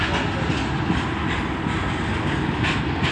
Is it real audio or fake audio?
real